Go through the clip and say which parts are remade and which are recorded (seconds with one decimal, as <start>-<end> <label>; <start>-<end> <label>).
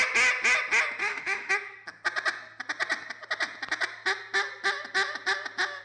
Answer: 0.0-1.0 recorded; 1.0-1.5 remade; 1.5-5.8 recorded